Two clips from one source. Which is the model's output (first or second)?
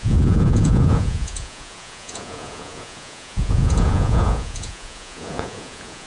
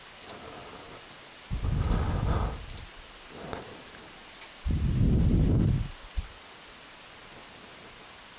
first